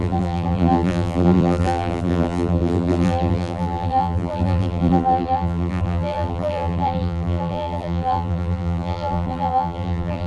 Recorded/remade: remade